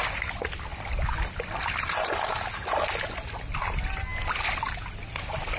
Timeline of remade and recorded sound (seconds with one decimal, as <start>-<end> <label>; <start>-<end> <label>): 0.0-5.6 recorded